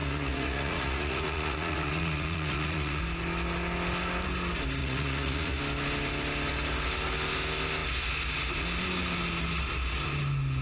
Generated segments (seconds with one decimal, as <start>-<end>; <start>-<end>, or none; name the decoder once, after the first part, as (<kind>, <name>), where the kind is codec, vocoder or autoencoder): 0.0-3.0 (vocoder, Vocos); 4.8-5.6